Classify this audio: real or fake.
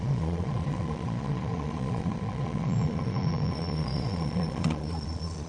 fake